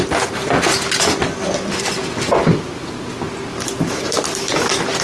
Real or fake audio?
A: real